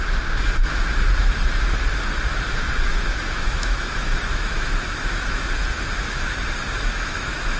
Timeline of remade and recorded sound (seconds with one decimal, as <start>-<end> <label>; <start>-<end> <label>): 0.0-2.9 recorded; 2.9-7.6 remade